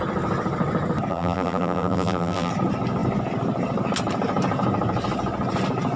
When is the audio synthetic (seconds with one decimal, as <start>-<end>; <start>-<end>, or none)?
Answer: 1.1-2.5